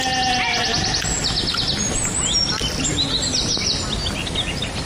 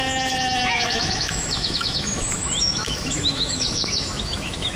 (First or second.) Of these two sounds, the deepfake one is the second